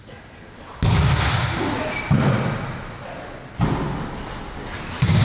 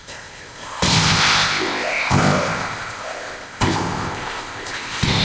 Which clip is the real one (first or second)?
first